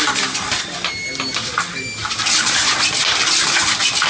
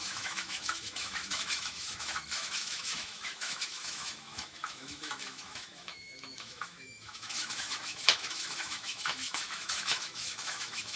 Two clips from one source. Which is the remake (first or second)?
second